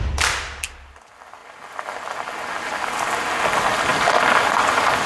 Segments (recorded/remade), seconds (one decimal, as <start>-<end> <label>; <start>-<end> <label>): 0.0-3.9 recorded; 3.9-4.6 remade; 4.6-5.1 recorded